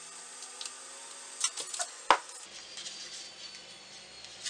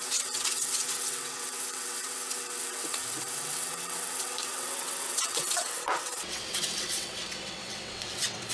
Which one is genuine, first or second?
first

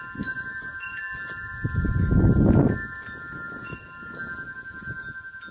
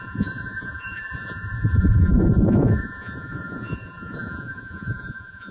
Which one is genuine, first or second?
first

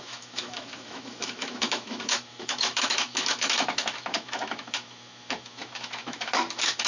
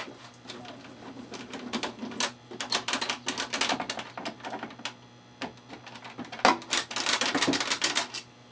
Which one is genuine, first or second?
second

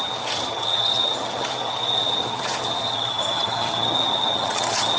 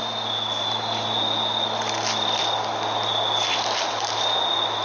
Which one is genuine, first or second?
second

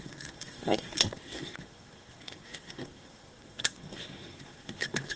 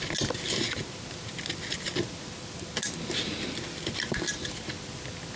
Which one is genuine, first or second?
second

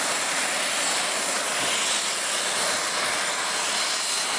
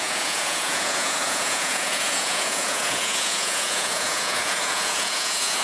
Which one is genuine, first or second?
first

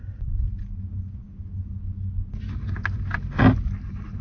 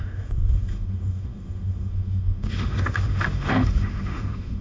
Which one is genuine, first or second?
first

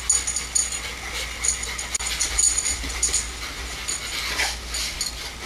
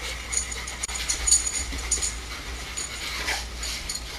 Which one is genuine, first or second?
first